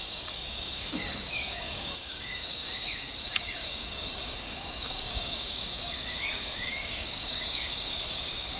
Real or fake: fake